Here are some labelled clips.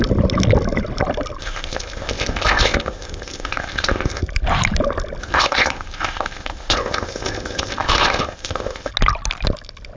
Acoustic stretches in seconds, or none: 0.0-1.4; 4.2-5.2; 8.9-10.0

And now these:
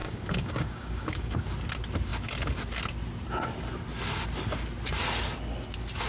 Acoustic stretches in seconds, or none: 1.4-6.1

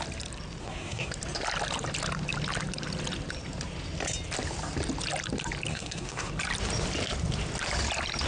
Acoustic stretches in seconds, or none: 0.0-0.6; 1.1-5.7; 6.3-8.3

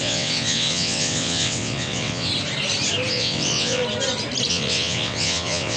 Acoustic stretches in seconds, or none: 2.3-3.1; 3.8-4.5

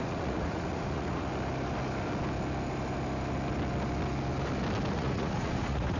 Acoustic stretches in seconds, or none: 1.3-4.9

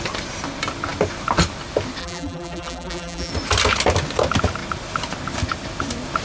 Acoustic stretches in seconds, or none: 0.0-2.0; 3.3-6.2